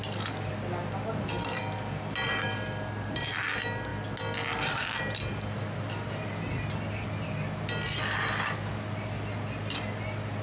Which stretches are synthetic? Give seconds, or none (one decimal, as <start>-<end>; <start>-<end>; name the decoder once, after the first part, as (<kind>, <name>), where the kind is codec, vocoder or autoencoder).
none

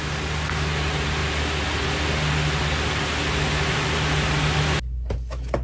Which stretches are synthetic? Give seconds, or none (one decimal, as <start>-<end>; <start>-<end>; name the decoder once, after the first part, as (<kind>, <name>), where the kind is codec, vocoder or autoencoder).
none

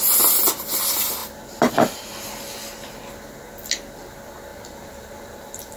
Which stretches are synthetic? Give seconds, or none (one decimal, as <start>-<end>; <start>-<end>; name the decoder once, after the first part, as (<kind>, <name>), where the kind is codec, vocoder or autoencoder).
4.5-5.8 (vocoder, BigVGAN v2)

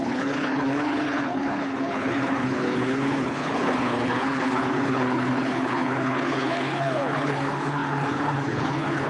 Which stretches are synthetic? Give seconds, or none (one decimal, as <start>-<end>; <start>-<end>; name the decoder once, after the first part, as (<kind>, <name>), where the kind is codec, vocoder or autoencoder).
0.0-9.1 (codec, HILCodec)

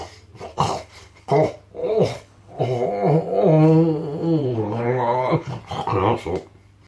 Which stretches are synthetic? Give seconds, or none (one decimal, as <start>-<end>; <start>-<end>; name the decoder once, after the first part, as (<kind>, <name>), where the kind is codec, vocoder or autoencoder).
0.5-1.3 (codec, HILCodec); 1.8-2.6; 4.4-5.5

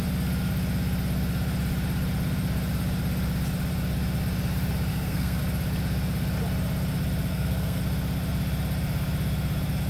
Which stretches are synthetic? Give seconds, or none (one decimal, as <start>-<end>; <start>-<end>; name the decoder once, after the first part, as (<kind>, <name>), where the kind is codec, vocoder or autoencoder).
4.9-5.4 (codec, SNAC); 7.3-7.8

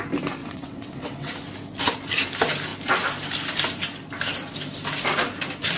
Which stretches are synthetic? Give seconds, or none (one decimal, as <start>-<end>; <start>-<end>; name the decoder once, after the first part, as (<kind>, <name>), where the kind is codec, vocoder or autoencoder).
0.4-1.3 (vocoder, WaveNeXt)